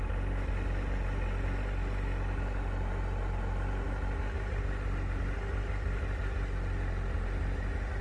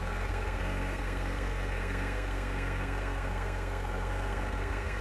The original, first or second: first